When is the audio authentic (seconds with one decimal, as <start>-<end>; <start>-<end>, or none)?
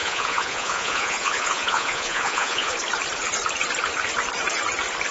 2.7-5.1